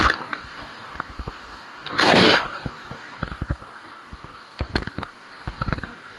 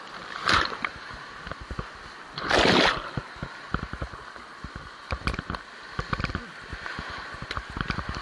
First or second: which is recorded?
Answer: second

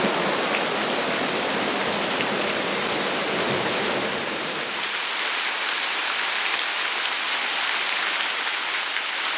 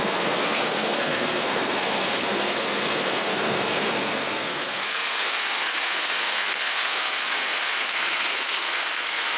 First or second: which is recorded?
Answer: first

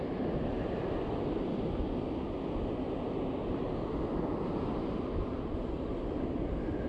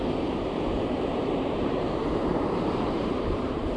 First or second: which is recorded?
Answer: first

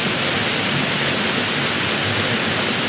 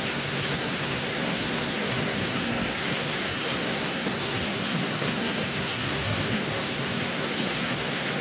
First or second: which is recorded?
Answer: first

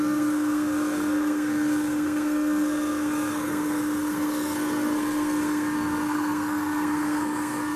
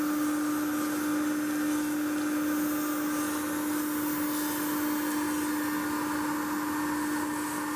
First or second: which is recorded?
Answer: second